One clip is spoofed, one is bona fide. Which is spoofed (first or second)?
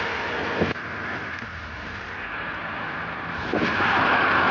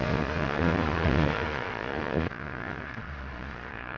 second